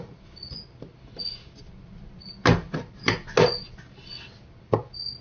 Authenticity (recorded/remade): recorded